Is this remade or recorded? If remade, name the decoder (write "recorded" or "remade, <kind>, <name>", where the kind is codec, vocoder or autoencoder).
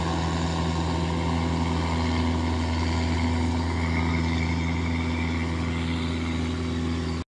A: recorded